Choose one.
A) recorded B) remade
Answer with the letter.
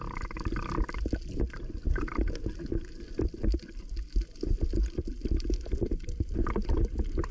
A